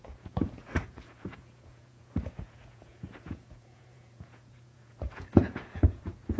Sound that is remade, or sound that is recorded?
remade